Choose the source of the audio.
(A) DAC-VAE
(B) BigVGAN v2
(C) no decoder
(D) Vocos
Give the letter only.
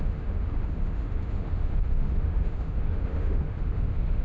A